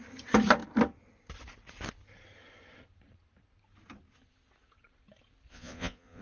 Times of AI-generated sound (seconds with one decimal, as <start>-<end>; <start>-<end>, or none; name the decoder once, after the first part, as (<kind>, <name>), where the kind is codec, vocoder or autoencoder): 5.5-6.2 (vocoder, Vocos)